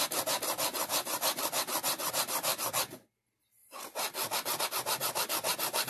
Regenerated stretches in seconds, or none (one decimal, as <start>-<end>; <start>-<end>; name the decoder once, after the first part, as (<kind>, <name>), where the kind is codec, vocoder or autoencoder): 0.9-2.1 (vocoder, BigVGAN v2)